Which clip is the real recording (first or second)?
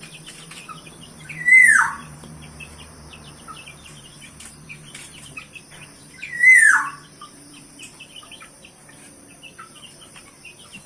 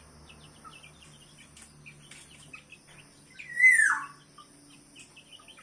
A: second